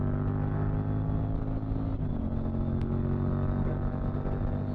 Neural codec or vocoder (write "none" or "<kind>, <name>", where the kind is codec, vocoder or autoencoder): none